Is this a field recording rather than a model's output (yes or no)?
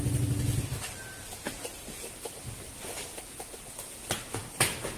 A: yes